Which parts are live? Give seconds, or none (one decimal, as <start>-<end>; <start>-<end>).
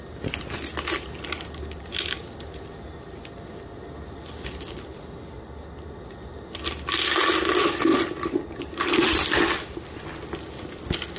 0.0-11.2